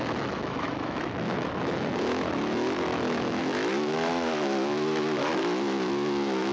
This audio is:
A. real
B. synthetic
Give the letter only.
B